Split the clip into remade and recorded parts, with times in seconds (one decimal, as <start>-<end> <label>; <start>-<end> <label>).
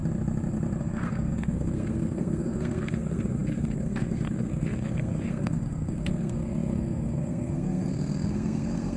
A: 0.0-0.8 recorded; 0.8-9.0 remade